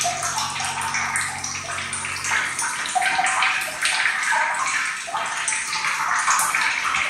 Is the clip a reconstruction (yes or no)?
no